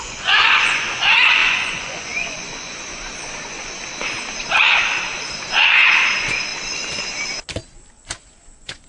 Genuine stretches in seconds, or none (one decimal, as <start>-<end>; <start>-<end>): 3.8-6.1; 6.5-8.1